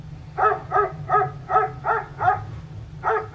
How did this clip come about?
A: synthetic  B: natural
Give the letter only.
B